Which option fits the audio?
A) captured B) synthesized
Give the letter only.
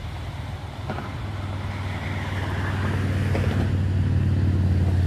A